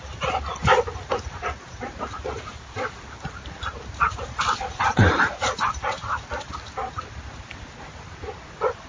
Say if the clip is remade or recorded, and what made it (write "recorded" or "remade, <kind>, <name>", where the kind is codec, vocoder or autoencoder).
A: remade, vocoder, BigVGAN v2